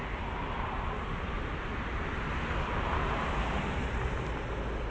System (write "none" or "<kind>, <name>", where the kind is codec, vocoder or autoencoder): none